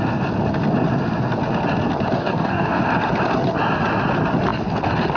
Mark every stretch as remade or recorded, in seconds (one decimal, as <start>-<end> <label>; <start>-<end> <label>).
0.0-2.2 recorded; 2.2-2.8 remade; 2.8-5.2 recorded